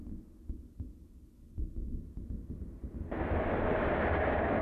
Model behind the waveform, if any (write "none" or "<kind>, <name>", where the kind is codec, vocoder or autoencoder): none